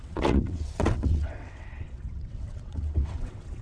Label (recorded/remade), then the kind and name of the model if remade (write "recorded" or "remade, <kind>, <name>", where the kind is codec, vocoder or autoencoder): remade, vocoder, WaveNeXt